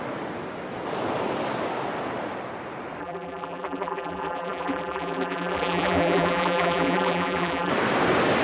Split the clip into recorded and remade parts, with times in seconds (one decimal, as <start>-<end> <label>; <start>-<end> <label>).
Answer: 0.0-3.0 recorded; 3.0-7.7 remade; 7.7-8.4 recorded